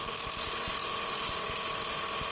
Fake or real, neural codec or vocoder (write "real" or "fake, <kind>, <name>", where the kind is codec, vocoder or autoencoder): real